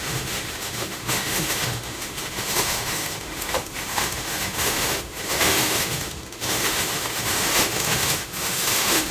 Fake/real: fake